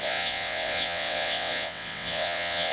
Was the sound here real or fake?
fake